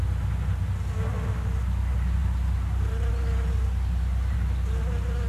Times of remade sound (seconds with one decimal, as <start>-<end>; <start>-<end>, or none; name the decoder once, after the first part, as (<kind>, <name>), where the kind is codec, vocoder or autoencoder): none